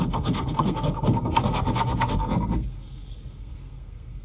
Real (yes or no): no